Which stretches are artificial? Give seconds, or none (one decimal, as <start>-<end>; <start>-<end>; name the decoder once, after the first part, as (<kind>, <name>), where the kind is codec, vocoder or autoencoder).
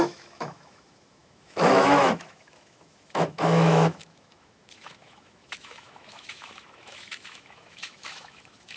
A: 0.0-8.8 (autoencoder, DAC-VAE)